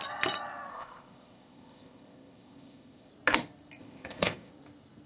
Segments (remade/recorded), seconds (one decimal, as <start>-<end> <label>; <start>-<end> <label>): 0.0-0.7 recorded; 0.7-3.1 remade; 3.1-3.8 recorded; 3.8-4.5 remade; 4.5-5.1 recorded